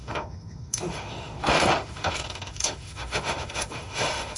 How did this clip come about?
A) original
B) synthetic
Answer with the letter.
B